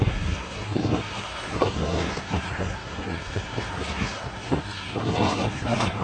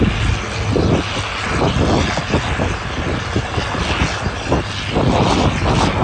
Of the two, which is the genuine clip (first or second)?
second